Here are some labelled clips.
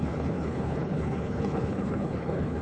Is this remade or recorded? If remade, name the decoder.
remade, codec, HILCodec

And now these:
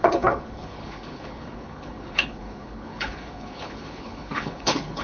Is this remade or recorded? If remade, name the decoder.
remade, codec, HILCodec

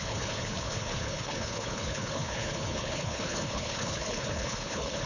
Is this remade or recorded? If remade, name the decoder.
remade, codec, HILCodec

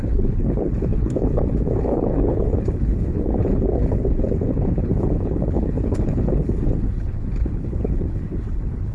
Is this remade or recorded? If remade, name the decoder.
remade, codec, HILCodec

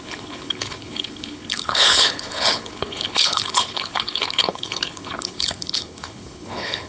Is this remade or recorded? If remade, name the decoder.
remade, codec, HILCodec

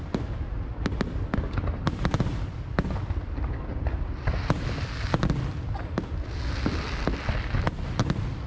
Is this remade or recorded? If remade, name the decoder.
recorded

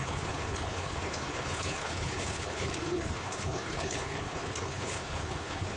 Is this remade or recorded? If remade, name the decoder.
remade, codec, HILCodec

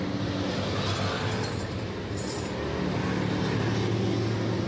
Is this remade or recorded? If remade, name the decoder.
recorded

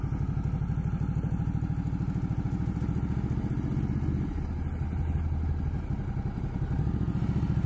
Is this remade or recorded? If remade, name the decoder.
recorded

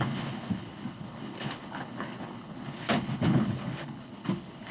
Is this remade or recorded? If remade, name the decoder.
remade, codec, HILCodec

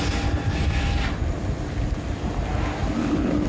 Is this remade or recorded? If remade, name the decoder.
recorded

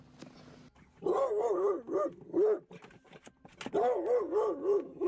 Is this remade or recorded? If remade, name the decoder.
recorded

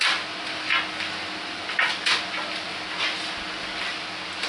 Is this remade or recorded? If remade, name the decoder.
recorded